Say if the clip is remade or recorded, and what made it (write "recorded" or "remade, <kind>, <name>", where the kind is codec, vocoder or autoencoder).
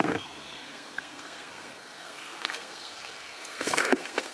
remade, codec, SNAC